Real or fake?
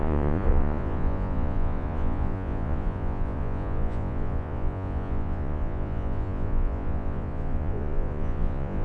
fake